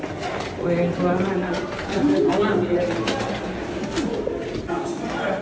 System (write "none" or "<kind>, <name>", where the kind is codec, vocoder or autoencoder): none